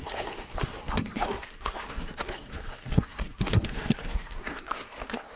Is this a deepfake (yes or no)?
yes